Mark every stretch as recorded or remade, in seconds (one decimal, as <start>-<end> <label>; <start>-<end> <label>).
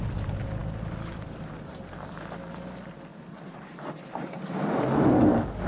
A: 0.0-3.1 recorded; 3.1-4.8 remade; 4.8-5.7 recorded